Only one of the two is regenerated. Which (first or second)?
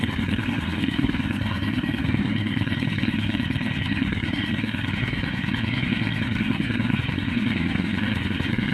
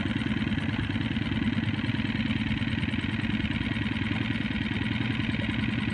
first